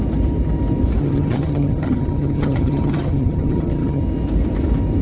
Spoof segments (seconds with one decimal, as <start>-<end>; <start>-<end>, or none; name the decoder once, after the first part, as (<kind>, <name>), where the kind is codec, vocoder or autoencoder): 1.0-4.0 (vocoder, HiFi-GAN)